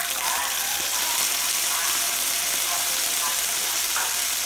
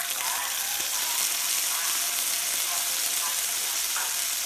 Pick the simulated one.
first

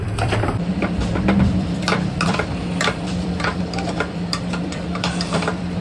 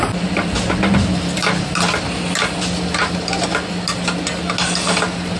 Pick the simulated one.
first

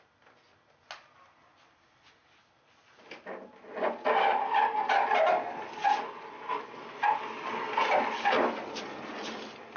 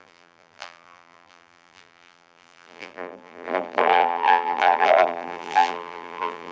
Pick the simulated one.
second